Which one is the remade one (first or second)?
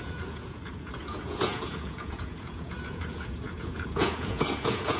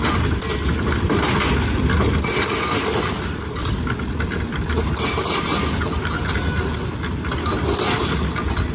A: first